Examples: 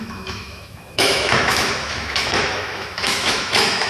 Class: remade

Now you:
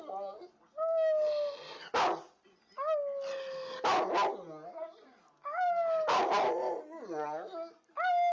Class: recorded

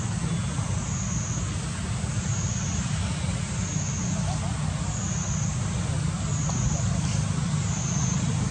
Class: recorded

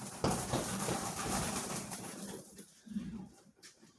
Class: remade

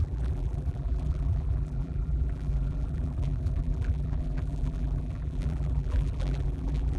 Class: remade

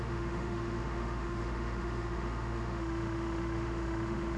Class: remade